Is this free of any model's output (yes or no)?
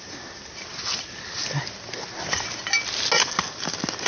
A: yes